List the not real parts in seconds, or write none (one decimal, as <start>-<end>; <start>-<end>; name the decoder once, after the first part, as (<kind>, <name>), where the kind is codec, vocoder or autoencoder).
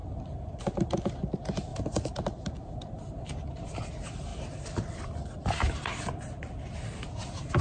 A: 0.0-0.6 (vocoder, BigVGAN v2); 1.7-3.8; 4.3-5.4